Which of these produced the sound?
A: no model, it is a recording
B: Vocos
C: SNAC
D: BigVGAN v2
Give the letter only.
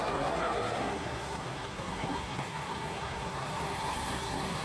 C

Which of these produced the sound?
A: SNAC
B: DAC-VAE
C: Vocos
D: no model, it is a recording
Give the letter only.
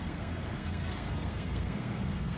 A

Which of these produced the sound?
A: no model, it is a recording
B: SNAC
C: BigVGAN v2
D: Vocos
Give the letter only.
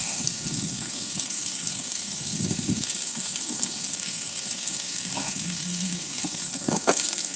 B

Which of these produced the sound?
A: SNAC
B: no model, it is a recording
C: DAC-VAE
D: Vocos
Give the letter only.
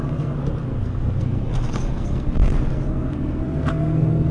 A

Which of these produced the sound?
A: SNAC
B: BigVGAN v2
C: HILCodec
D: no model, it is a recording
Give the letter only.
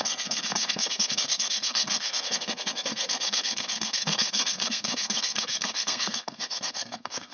A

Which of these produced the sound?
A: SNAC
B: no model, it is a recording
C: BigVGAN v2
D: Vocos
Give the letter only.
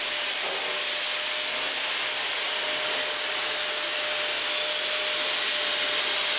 B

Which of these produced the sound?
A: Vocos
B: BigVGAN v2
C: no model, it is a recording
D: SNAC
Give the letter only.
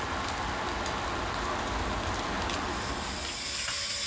C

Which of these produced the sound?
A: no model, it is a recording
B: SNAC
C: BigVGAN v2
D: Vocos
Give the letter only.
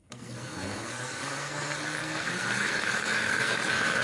B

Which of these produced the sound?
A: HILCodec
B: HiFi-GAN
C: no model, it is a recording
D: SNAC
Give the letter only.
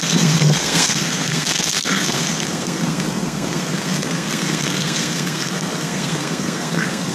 D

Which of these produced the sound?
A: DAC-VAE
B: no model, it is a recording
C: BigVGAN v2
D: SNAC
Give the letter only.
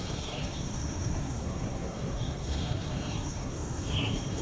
D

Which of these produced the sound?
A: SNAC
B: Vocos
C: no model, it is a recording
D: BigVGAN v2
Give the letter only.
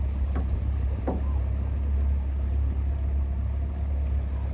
C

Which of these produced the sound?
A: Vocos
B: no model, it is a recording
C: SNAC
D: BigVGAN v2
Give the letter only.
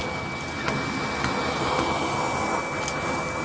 B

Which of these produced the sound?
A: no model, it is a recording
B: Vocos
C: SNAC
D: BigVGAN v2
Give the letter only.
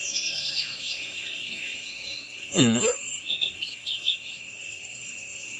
C